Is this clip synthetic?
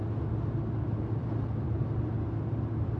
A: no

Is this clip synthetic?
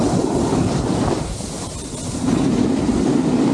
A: no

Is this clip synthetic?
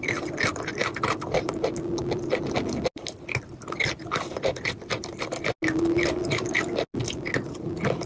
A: no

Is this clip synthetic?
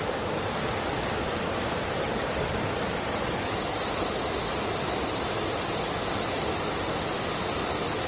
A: no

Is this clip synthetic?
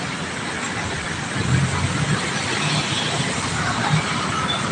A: no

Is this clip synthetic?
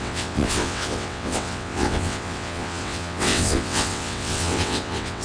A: yes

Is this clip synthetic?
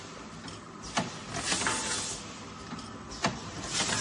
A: no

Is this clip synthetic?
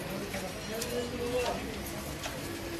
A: no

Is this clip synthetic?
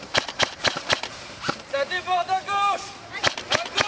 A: yes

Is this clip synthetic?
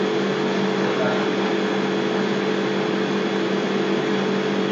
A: no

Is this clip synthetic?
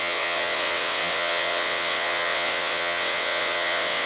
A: yes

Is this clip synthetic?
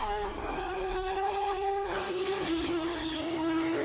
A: yes